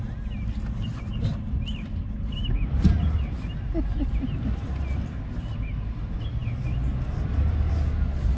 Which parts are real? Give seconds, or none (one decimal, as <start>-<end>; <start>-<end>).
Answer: 0.0-8.4